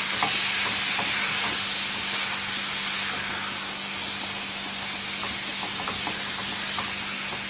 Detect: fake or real real